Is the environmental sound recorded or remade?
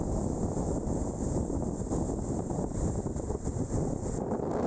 remade